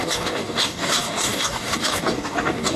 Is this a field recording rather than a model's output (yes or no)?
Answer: no